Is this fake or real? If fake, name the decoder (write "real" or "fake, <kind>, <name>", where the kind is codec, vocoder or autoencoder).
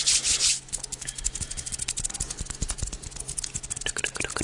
real